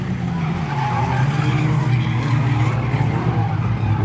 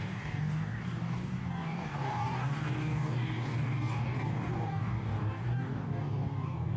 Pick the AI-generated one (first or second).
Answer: second